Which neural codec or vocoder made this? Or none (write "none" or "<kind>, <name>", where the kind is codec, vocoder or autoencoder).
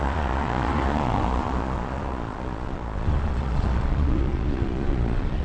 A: vocoder, Vocos